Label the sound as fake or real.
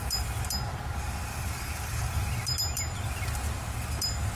real